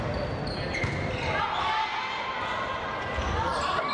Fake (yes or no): no